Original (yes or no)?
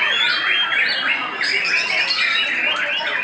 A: yes